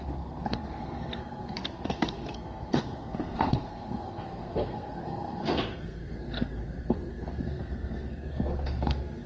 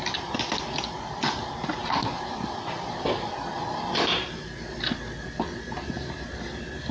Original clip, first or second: second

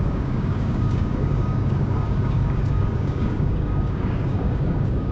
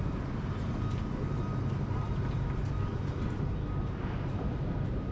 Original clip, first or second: second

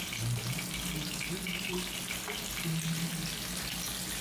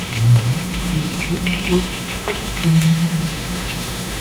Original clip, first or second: first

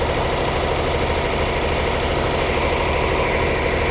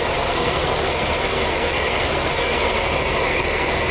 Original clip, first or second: first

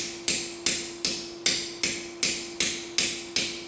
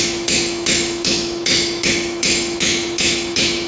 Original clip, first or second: first